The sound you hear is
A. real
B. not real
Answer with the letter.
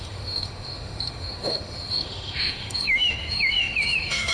B